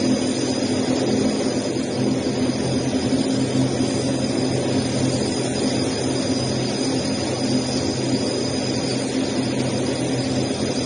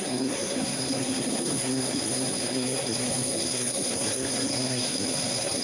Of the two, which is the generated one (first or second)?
second